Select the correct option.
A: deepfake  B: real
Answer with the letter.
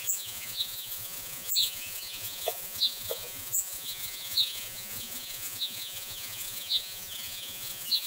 A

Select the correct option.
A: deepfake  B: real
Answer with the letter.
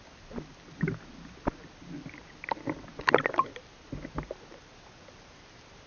B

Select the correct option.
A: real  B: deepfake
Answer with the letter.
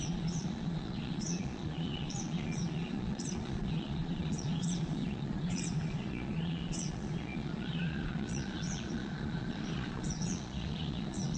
B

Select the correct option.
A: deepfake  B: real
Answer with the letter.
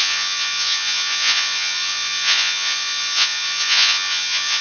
A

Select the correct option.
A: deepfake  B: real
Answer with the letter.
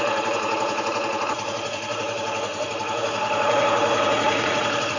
A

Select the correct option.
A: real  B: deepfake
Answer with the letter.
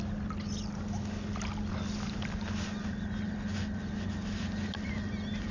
A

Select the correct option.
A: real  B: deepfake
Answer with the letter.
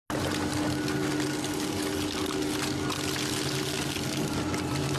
A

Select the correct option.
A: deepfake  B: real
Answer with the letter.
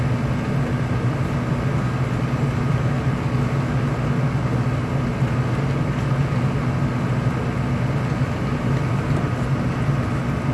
B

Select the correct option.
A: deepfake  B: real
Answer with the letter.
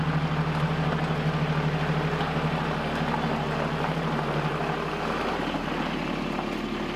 B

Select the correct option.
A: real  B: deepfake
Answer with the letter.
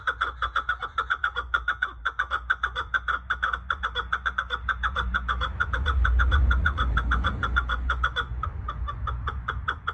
B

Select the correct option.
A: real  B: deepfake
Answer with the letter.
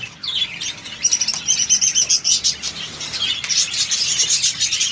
A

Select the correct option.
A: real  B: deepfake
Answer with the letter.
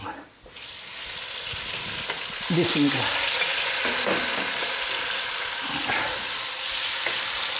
A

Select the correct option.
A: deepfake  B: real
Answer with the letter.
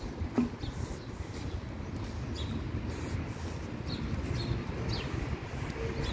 B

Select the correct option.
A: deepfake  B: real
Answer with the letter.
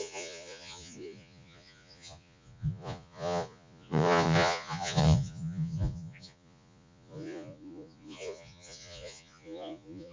A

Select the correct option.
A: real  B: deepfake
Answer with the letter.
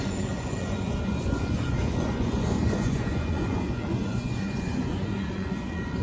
B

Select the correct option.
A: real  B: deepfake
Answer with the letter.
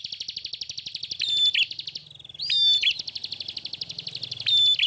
A